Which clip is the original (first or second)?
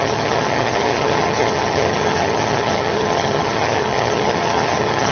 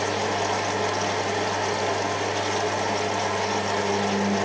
second